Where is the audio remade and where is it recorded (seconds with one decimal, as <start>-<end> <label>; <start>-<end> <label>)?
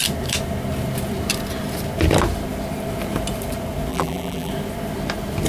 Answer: 0.0-3.9 recorded; 3.9-4.5 remade; 4.5-5.5 recorded